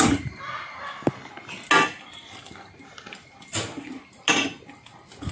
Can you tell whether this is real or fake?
real